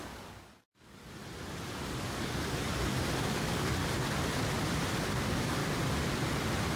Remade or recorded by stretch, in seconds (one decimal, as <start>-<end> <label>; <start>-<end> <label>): 0.0-1.0 remade; 1.0-2.0 recorded; 2.0-2.7 remade; 2.7-3.2 recorded; 3.2-3.8 remade; 3.8-5.1 recorded; 5.1-5.6 remade; 5.6-6.8 recorded